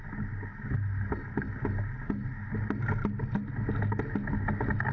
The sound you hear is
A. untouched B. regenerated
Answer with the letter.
A